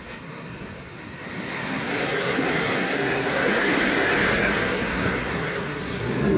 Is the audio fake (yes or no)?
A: yes